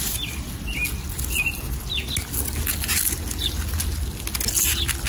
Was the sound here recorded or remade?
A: recorded